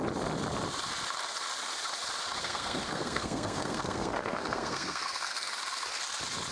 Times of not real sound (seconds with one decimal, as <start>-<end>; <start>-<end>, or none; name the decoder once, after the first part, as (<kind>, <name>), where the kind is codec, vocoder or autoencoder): 2.4-5.5 (codec, SNAC)